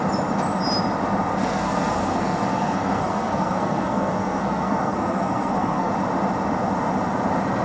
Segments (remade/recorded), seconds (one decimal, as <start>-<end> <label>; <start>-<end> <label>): 0.0-1.3 recorded; 1.3-5.9 remade; 5.9-7.6 recorded